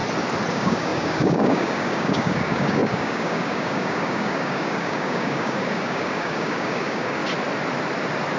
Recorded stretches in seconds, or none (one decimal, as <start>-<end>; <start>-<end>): 0.0-0.5; 7.2-8.4